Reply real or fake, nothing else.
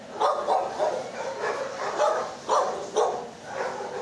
real